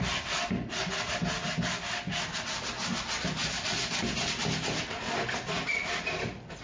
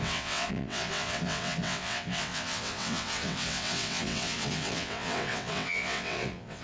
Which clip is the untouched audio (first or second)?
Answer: first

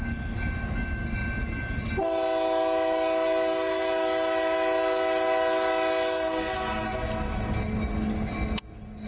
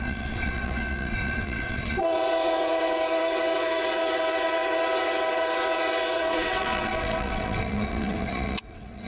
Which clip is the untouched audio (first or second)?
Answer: first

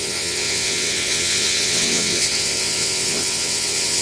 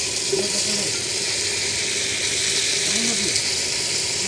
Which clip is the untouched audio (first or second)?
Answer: second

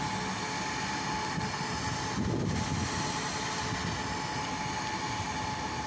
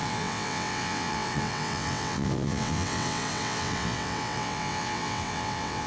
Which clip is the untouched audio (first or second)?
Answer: first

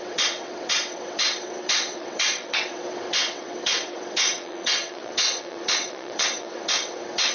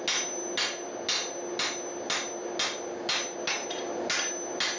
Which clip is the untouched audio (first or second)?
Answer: second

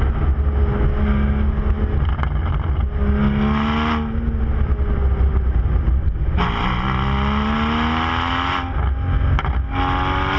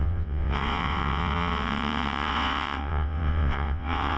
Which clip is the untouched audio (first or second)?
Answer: first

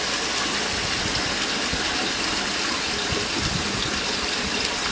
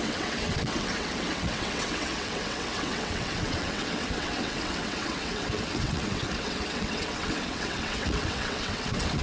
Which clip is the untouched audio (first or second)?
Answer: first